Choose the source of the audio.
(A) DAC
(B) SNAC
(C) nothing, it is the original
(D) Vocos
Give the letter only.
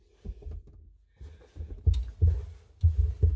C